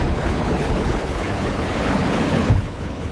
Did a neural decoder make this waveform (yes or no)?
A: yes